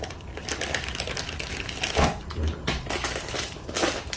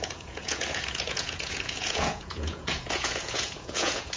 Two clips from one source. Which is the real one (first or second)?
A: first